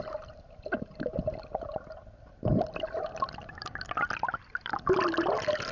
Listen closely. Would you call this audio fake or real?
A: real